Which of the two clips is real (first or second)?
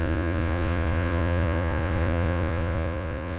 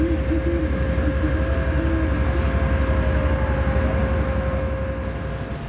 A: second